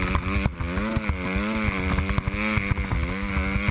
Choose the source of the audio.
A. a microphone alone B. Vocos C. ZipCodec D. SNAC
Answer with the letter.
A